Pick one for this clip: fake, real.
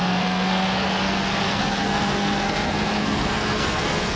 fake